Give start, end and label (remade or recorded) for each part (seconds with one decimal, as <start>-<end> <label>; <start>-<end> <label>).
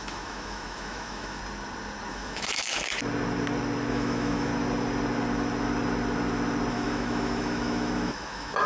0.0-1.4 remade; 1.4-2.1 recorded; 2.1-2.9 remade; 2.9-3.9 recorded; 3.9-4.5 remade; 4.5-6.7 recorded; 6.7-8.7 remade